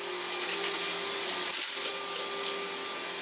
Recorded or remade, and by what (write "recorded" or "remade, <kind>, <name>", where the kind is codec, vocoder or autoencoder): recorded